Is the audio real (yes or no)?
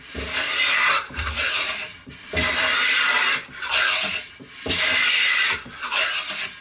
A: no